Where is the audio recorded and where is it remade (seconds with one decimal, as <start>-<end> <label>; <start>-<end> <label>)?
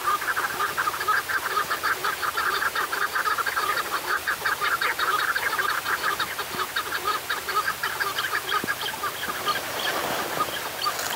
0.0-11.2 recorded